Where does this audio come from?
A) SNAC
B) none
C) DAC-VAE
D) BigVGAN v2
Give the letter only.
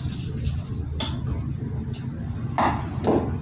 B